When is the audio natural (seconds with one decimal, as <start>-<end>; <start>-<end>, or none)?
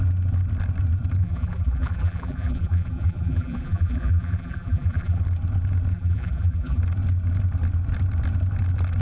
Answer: 0.0-1.2; 5.2-5.9; 6.8-9.0